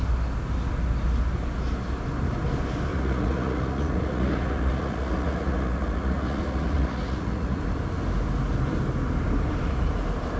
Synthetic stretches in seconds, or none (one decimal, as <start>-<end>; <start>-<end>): 2.9-7.6